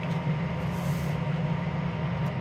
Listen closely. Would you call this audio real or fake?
real